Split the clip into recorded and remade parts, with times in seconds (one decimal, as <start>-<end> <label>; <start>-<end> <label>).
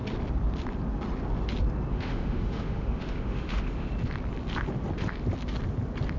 0.0-1.9 recorded; 1.9-3.9 remade; 3.9-6.2 recorded